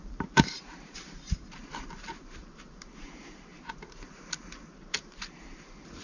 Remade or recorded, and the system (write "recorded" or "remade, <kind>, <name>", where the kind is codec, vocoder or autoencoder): remade, vocoder, BigVGAN v2